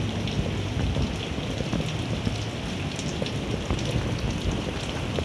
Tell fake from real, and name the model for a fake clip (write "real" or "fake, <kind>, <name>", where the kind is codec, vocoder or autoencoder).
real